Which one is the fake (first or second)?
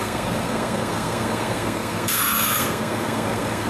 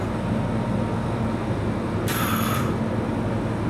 first